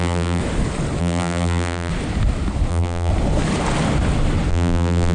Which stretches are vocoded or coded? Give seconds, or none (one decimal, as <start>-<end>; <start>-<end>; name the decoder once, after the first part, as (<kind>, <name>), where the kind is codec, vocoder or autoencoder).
0.0-0.4 (vocoder, BigVGAN v2); 1.0-1.9; 2.7-3.1; 4.5-5.1